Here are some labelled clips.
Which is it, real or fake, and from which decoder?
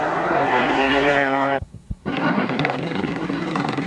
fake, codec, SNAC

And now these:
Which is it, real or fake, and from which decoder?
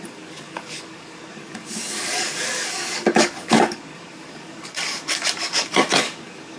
fake, codec, DAC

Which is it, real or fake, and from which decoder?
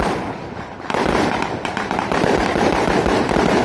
fake, vocoder, BigVGAN v2